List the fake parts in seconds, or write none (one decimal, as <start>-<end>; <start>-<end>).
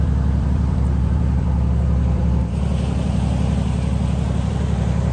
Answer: 0.0-2.2; 4.5-5.1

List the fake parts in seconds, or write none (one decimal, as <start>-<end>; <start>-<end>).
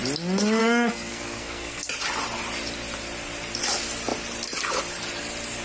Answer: 0.6-1.9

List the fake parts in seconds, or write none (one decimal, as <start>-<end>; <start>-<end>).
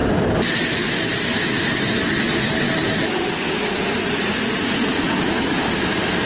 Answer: 4.0-5.4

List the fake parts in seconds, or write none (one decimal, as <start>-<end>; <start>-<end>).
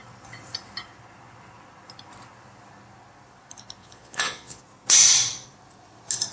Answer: 3.8-4.6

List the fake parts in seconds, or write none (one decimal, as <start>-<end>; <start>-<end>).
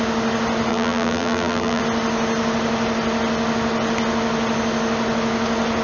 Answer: 0.7-1.8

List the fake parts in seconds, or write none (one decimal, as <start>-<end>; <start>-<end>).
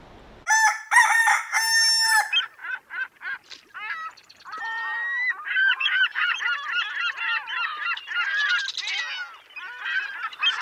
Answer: 5.6-6.4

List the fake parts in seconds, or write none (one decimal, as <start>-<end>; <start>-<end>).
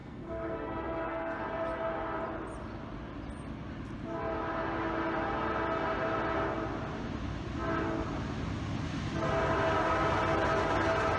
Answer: 0.0-1.4